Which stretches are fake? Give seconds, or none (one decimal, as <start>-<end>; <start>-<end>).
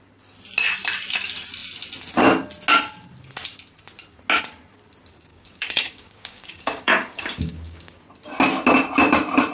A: 5.3-8.0